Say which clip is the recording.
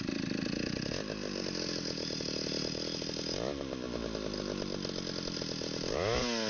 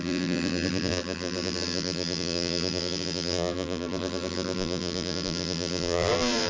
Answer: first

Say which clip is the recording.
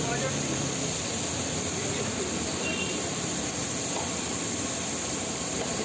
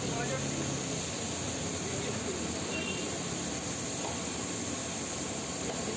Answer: second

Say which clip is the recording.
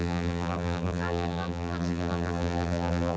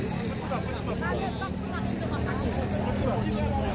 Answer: second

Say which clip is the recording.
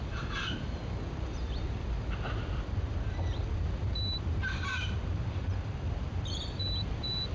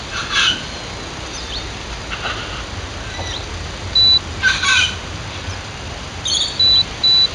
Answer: second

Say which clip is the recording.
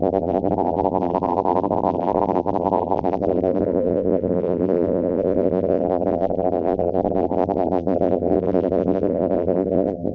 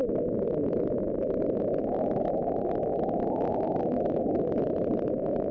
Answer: second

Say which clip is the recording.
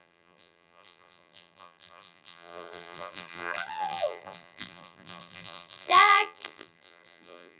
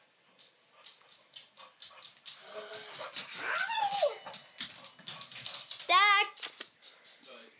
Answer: second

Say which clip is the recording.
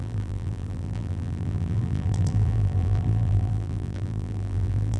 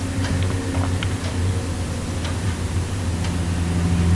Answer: second